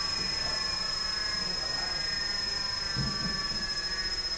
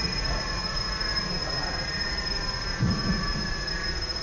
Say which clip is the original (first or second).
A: first